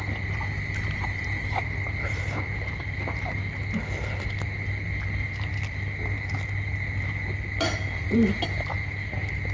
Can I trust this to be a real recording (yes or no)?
yes